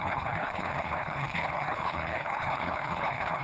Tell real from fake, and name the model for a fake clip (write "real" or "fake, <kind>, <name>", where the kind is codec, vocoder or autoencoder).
fake, codec, HILCodec